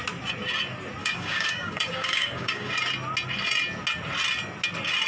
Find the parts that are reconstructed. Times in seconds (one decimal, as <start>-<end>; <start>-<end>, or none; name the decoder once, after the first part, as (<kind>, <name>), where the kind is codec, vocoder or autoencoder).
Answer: 1.0-2.7 (codec, DAC)